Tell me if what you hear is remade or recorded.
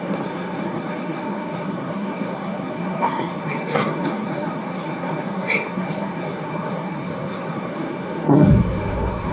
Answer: remade